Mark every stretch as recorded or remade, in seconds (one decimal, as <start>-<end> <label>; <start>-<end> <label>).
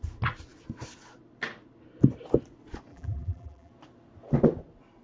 0.0-2.9 recorded; 2.9-3.7 remade; 3.7-5.0 recorded